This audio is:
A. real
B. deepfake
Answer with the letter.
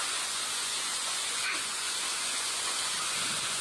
B